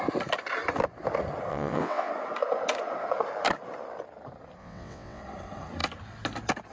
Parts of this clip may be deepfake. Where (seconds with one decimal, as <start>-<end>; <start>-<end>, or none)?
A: 1.5-2.1; 4.6-5.2